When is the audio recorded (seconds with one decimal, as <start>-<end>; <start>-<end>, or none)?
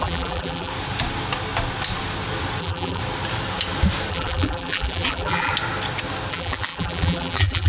0.7-2.6; 3.0-4.1; 5.5-6.3